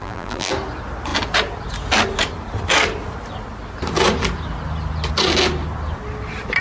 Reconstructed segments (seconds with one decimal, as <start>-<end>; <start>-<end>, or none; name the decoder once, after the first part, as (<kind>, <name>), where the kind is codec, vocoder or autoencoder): 0.0-0.5 (vocoder, BigVGAN v2)